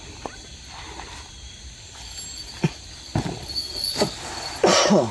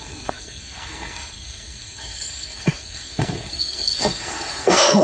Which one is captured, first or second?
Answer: first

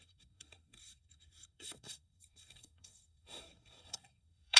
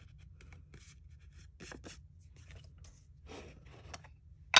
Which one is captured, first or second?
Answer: second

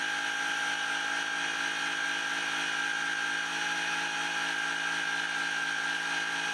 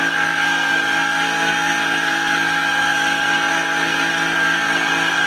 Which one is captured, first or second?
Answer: first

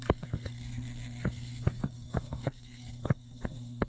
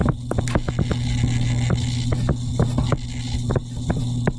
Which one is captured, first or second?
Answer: second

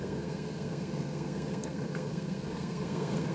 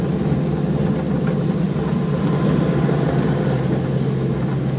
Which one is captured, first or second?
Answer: second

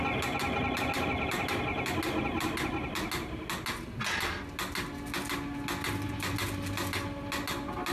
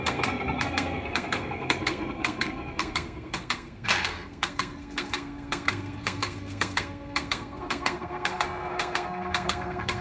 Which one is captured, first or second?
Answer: first